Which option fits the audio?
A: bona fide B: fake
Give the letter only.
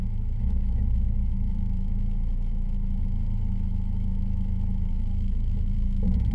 B